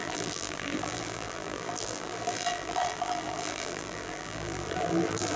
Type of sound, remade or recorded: remade